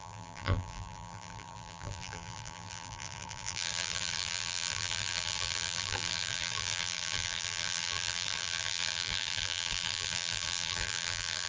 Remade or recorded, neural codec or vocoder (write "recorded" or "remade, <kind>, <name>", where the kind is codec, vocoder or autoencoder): remade, vocoder, BigVGAN v2